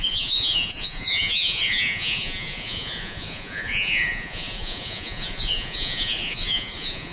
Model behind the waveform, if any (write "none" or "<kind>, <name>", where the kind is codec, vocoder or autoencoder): vocoder, Vocos